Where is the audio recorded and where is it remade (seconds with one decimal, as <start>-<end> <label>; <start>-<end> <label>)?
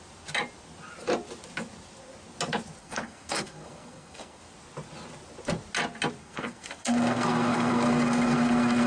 0.0-2.8 recorded; 2.8-4.4 remade; 4.4-6.2 recorded; 6.2-8.9 remade